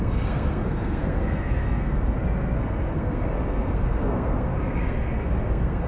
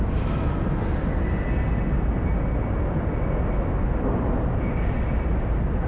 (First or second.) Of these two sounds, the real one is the second